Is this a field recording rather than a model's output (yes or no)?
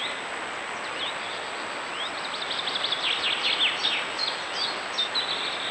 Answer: yes